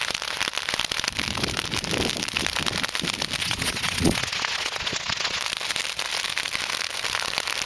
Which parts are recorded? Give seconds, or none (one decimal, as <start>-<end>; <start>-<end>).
0.0-3.4; 5.4-7.7

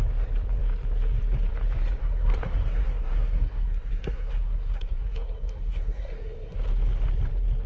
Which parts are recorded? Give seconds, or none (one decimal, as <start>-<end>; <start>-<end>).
0.0-2.0; 6.6-7.7

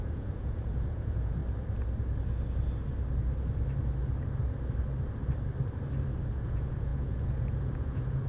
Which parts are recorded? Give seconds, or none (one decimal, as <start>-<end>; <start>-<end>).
1.4-6.3

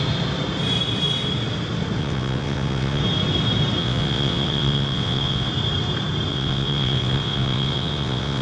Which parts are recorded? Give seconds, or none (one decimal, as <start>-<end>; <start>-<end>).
0.0-2.0; 3.0-3.8; 5.5-6.3

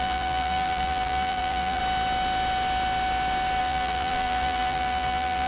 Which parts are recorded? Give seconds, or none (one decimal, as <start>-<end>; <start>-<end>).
1.8-3.6